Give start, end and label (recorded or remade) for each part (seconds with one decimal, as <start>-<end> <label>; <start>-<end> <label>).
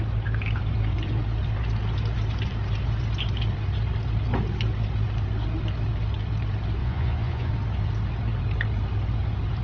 0.0-6.8 recorded; 6.8-7.5 remade; 7.5-9.6 recorded